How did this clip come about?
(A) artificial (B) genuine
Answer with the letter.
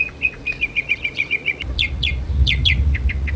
A